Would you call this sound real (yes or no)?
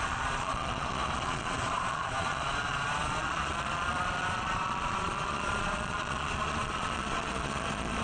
no